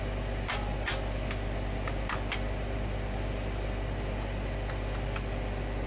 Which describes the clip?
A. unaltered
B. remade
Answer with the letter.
A